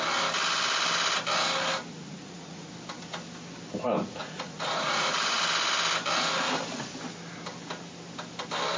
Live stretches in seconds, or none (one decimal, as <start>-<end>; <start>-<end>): 0.0-1.9; 2.7-4.2; 5.4-8.8